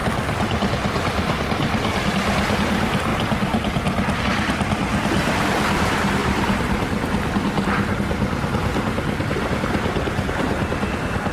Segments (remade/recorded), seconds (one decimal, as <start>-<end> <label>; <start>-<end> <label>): 0.0-9.2 recorded; 9.2-10.7 remade; 10.7-11.3 recorded